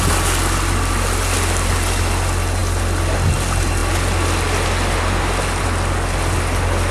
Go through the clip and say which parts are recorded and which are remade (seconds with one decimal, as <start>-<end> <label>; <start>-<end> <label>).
0.0-6.9 recorded